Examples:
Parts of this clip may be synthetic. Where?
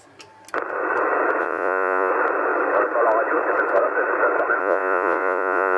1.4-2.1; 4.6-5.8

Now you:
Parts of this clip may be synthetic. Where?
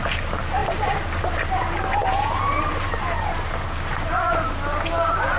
none